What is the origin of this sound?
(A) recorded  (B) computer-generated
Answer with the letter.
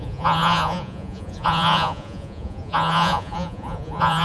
B